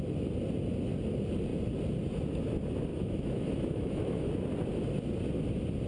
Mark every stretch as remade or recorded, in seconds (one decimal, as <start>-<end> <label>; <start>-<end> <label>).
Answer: 0.0-2.9 recorded; 2.9-4.3 remade; 4.3-5.9 recorded